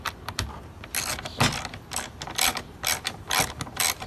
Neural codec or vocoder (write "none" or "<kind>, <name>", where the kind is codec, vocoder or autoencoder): none